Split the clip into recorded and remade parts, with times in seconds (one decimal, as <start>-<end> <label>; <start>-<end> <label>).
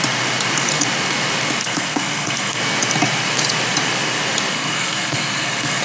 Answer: 0.0-1.6 recorded; 1.6-2.6 remade; 2.6-4.5 recorded; 4.5-5.8 remade